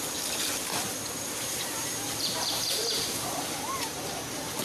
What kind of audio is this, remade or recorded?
remade